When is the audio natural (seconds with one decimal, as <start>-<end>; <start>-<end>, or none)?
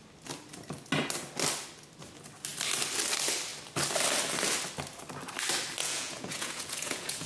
0.0-5.8